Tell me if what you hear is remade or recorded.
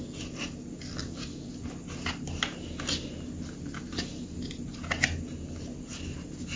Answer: recorded